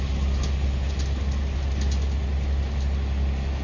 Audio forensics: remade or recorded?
recorded